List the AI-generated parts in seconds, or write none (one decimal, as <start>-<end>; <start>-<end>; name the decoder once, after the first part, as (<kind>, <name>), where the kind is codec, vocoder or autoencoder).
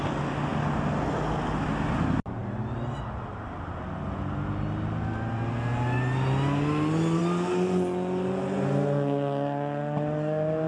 none